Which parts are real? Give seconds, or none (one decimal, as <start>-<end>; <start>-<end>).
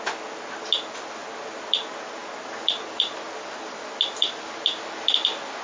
0.0-5.6